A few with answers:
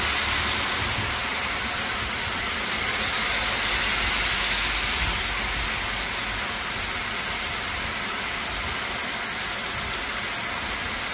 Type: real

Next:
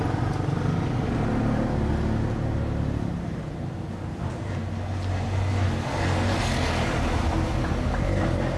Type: real